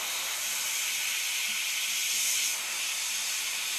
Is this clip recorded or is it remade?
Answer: recorded